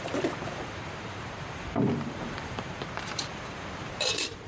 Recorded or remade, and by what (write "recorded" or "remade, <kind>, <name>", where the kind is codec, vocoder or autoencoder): remade, vocoder, BigVGAN v2